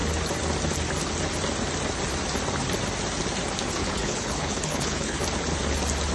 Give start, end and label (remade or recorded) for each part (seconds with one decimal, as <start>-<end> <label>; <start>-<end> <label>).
0.0-3.8 recorded; 3.8-5.2 remade; 5.2-6.1 recorded